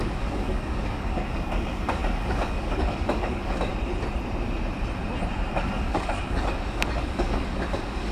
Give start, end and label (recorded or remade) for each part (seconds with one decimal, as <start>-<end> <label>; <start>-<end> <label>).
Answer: 0.0-3.7 remade; 3.7-5.5 recorded; 5.5-8.1 remade